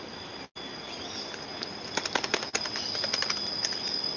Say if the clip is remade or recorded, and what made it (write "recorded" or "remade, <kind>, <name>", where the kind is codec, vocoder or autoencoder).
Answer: recorded